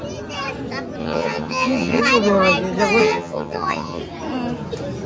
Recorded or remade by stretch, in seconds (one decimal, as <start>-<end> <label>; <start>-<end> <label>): 0.0-1.0 recorded; 1.0-2.0 remade; 2.0-3.0 recorded; 3.0-4.0 remade; 4.0-5.1 recorded